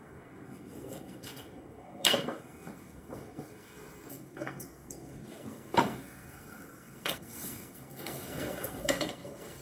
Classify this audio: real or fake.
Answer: fake